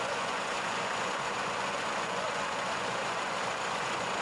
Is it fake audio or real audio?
fake